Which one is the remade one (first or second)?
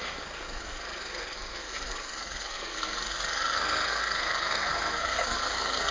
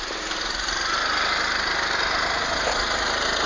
first